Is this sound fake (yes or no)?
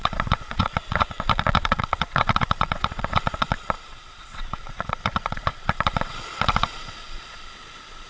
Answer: yes